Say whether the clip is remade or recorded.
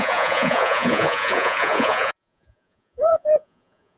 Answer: remade